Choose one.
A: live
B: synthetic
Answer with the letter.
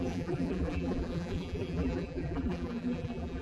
B